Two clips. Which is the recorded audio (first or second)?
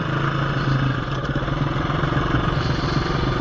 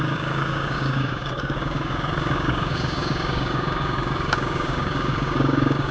first